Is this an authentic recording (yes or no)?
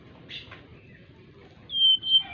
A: yes